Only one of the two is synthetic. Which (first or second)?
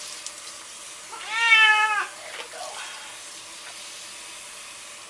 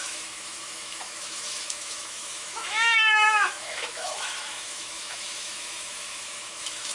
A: second